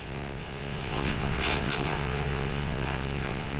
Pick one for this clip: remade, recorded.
remade